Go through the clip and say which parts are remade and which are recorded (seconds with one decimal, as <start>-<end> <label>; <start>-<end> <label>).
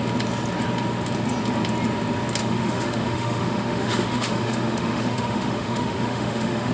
0.0-2.4 recorded; 2.4-6.7 remade